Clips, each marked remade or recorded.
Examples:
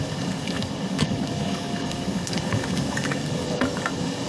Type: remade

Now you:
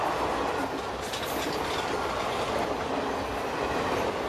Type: recorded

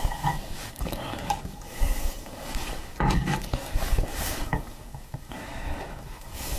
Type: remade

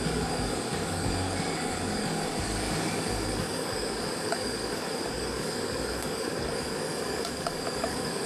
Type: remade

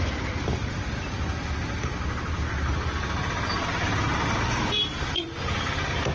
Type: recorded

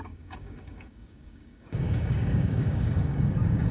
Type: remade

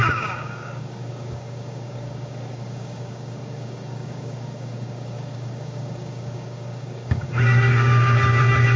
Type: remade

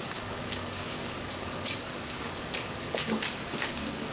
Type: remade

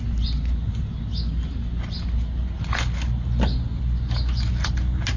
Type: recorded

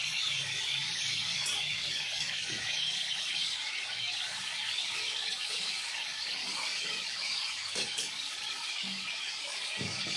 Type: remade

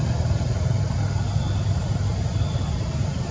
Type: recorded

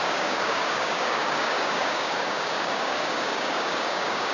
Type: remade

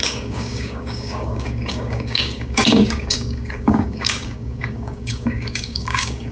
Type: remade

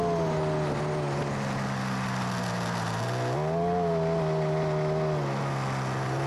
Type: recorded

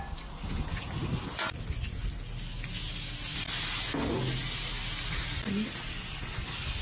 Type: recorded